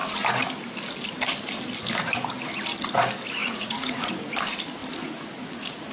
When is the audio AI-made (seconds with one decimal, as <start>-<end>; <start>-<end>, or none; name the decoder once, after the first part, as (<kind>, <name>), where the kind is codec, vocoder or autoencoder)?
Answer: 3.4-4.1 (vocoder, Vocos); 4.8-5.9